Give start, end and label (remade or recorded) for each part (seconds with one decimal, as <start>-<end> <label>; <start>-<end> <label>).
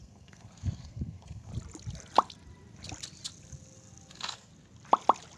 0.0-1.5 remade; 1.5-4.1 recorded; 4.1-4.5 remade; 4.5-5.4 recorded